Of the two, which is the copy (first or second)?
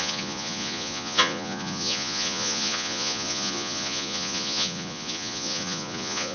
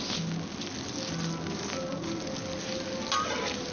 first